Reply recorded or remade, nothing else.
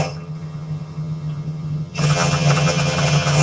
remade